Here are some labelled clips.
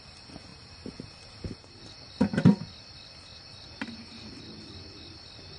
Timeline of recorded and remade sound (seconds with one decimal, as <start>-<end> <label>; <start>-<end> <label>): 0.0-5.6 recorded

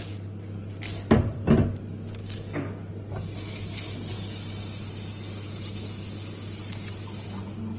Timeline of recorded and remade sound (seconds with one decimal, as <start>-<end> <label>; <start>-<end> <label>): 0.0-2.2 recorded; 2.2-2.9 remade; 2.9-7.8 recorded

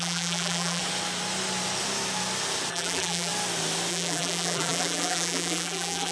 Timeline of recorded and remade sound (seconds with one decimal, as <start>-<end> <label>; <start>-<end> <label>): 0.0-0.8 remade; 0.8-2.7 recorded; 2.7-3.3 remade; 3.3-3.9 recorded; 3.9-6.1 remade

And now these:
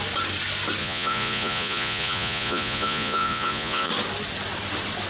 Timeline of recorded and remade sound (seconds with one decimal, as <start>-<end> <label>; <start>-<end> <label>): 0.0-0.8 recorded; 0.8-3.9 remade; 3.9-5.1 recorded

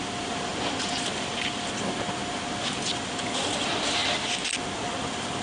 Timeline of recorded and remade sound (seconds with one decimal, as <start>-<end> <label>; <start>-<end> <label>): 0.0-5.4 recorded

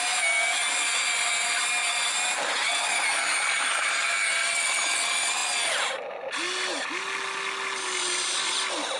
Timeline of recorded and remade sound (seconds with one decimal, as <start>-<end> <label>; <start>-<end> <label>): 0.0-9.0 recorded

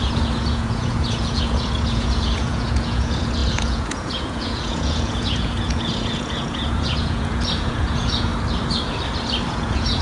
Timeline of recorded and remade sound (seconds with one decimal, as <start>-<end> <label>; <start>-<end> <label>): 0.0-8.3 remade; 8.3-9.5 recorded; 9.5-10.0 remade

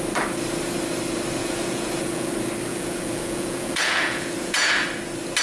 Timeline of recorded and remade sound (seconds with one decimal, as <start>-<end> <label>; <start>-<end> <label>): 0.0-1.4 recorded; 1.4-2.3 remade; 2.3-2.7 recorded; 2.7-4.7 remade; 4.7-5.4 recorded